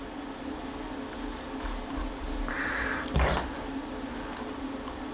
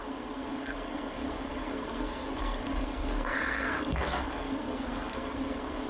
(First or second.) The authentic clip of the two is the first